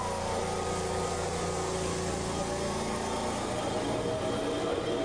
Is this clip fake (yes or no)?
no